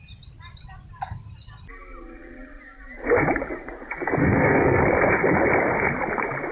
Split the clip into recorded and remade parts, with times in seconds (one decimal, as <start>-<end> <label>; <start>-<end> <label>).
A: 0.0-4.2 recorded; 4.2-4.8 remade; 4.8-6.5 recorded